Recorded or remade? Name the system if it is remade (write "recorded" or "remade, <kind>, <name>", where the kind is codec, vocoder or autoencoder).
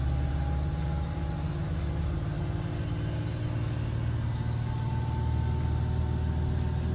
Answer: recorded